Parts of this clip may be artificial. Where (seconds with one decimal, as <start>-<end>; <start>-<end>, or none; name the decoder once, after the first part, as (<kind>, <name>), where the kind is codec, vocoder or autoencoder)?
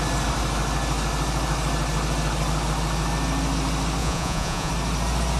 4.0-4.7 (vocoder, Vocos)